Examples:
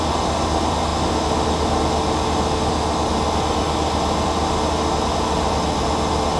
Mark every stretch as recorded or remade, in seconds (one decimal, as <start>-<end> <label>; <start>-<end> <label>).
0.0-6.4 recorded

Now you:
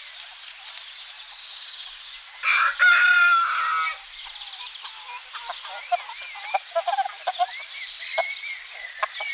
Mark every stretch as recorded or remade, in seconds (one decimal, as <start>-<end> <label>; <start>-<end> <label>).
0.0-1.4 recorded; 1.4-2.1 remade; 2.1-9.3 recorded

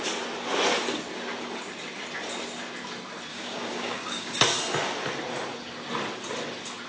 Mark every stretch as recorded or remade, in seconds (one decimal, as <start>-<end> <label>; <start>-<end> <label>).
0.0-3.3 recorded; 3.3-4.4 remade; 4.4-6.9 recorded

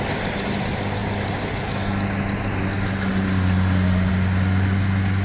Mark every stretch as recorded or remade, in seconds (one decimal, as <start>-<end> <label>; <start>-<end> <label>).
0.0-5.2 recorded